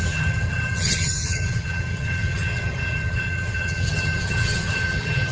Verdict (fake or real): fake